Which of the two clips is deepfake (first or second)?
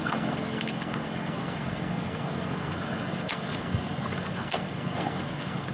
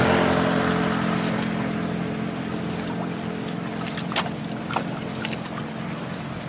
first